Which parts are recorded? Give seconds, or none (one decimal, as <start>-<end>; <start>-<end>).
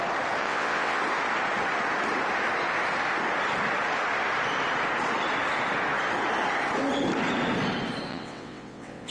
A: 0.0-0.4; 1.0-8.1